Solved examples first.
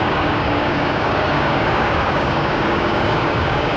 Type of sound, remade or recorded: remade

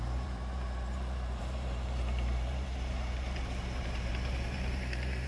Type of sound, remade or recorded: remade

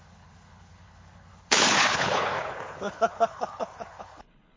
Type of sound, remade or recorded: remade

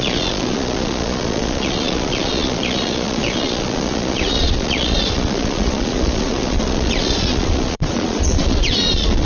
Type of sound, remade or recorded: remade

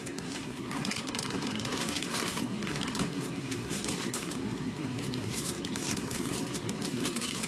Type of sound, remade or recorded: remade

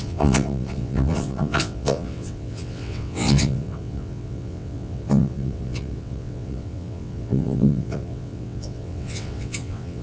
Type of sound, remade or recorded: remade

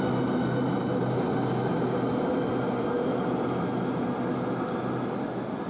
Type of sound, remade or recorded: recorded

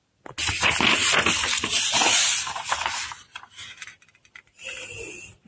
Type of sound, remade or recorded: recorded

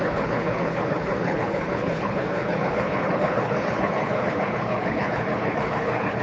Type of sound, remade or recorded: remade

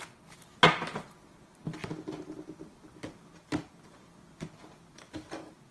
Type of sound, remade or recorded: recorded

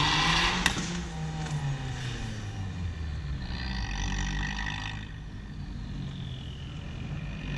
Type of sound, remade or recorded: recorded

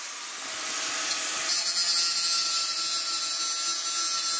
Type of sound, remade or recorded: recorded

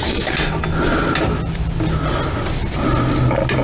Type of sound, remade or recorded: recorded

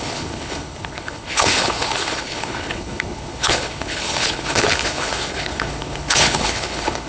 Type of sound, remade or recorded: remade